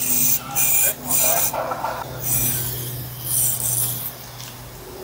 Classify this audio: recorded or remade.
recorded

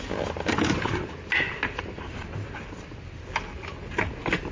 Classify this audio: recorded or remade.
recorded